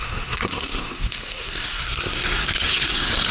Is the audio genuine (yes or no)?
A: no